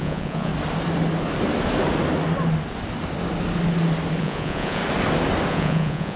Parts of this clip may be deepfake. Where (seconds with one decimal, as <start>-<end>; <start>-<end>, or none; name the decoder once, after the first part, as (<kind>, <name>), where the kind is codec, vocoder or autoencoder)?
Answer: 0.0-0.5 (vocoder, Vocos); 4.2-4.8; 5.5-6.2

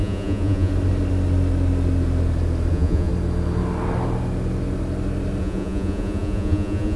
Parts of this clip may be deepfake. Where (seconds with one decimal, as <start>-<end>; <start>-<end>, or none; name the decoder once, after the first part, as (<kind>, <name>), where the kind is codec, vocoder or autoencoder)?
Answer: 0.0-0.7 (vocoder, Vocos); 2.7-3.1; 5.4-7.0

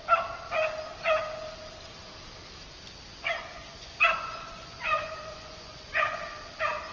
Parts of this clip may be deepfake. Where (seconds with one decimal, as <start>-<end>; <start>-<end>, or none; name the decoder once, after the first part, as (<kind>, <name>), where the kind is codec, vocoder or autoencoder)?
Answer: 3.1-6.2 (vocoder, Vocos)

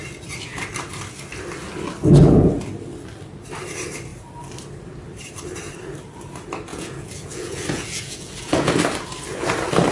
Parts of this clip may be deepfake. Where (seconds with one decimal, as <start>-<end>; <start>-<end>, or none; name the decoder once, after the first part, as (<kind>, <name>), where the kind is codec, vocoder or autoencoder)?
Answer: 6.7-8.7 (vocoder, Vocos)

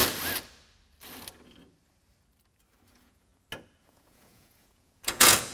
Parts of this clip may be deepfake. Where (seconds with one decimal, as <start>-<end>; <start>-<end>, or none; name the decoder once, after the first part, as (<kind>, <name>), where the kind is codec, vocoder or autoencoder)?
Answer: 2.9-3.3 (vocoder, Vocos); 3.8-5.5

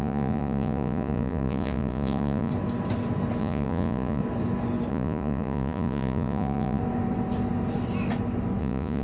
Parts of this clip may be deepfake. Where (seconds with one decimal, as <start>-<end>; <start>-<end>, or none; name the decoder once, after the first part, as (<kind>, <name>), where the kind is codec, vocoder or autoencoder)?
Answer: 0.0-2.5 (vocoder, Vocos); 3.4-4.2; 4.9-6.8; 8.6-9.0

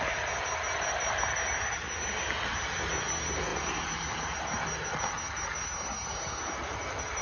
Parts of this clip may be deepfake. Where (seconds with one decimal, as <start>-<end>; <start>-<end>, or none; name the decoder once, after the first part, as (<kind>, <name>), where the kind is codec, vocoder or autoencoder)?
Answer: none